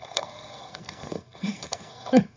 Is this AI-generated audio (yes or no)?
yes